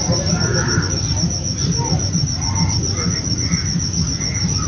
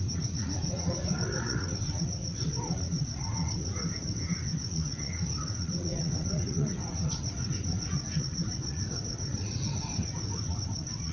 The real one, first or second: first